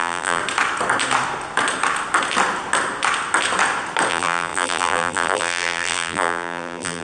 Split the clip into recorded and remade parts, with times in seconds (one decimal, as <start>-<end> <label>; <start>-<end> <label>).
0.0-0.4 remade; 0.4-4.1 recorded; 4.1-7.0 remade